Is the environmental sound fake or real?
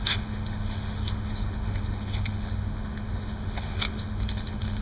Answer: fake